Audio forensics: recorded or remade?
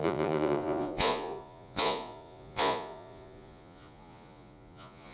remade